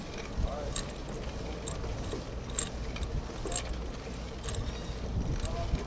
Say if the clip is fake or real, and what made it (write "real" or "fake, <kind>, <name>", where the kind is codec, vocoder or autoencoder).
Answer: real